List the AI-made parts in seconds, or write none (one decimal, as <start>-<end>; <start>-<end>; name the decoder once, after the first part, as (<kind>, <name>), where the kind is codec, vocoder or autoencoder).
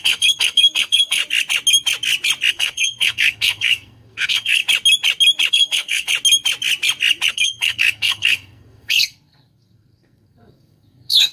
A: 0.0-1.2 (codec, SNAC); 2.5-4.6; 5.5-6.1; 7.3-11.3